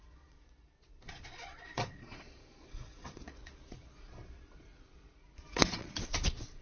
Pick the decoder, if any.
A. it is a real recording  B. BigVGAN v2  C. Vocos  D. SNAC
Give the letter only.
C